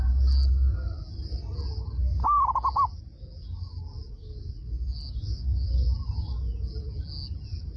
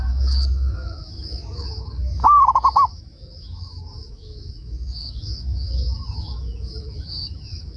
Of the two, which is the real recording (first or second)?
first